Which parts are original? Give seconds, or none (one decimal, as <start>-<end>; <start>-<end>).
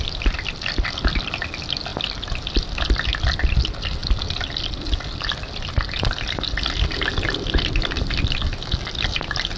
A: 0.0-9.6